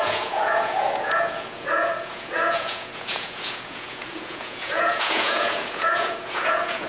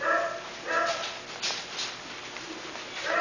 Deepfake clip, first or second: first